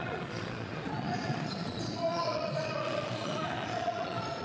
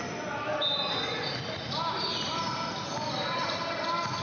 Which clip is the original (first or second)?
second